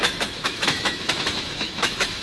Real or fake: fake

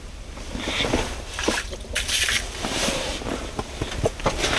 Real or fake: real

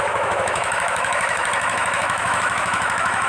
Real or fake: fake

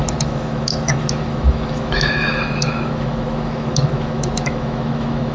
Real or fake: fake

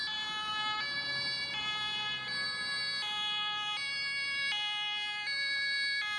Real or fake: real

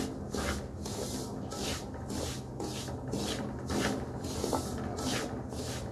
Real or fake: real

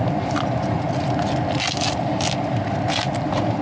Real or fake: real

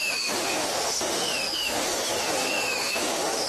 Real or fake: fake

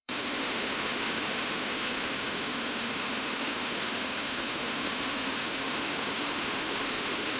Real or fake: fake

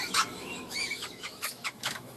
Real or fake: fake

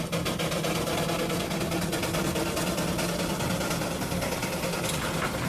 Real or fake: real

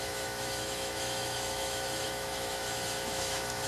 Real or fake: fake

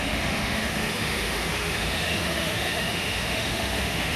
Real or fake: fake